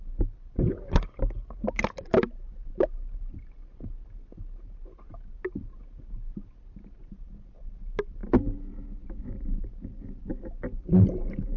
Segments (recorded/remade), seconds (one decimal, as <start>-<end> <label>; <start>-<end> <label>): 0.0-7.0 recorded; 7.0-7.7 remade; 7.7-11.6 recorded